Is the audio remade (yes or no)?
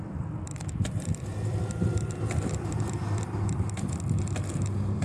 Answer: yes